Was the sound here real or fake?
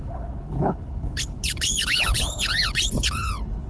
fake